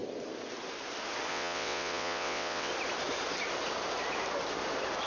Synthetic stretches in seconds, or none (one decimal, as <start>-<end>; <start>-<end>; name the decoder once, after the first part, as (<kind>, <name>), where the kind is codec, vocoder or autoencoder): 1.3-2.7 (vocoder, WaveNeXt)